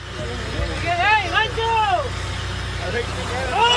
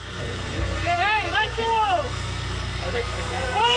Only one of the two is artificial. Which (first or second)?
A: second